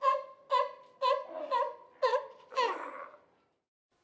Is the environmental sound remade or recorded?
recorded